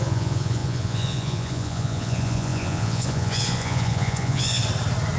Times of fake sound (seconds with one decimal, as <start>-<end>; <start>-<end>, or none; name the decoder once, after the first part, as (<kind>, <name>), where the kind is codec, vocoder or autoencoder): 0.0-4.6 (vocoder, Vocos)